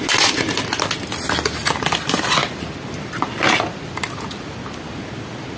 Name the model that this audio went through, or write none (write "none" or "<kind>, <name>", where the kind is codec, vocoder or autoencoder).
none